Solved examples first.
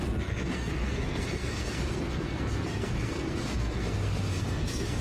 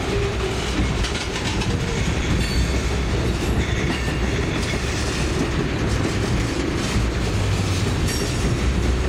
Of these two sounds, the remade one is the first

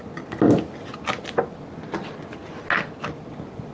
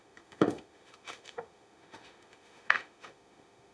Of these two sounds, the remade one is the second